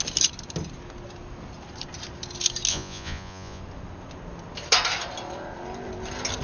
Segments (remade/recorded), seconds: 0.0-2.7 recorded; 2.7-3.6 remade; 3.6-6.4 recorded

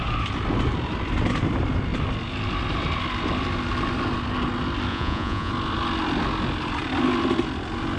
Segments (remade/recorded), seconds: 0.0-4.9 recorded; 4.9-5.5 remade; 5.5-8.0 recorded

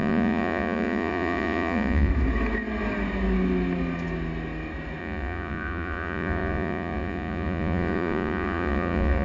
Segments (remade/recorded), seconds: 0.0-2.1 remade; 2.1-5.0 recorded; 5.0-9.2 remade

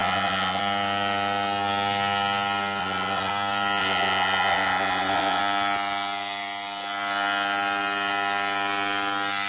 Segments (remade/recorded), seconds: 0.0-0.6 remade; 0.6-2.8 recorded; 2.8-3.3 remade; 3.3-3.8 recorded; 3.8-5.4 remade; 5.4-9.5 recorded

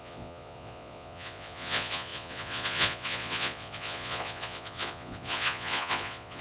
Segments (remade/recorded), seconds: 0.0-6.4 remade